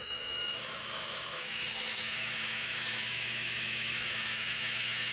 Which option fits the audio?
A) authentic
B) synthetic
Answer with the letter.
B